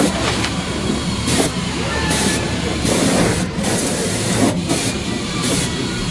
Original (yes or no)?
no